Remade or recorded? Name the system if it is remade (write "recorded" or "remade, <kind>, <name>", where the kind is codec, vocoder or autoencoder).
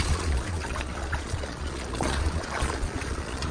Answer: remade, vocoder, Vocos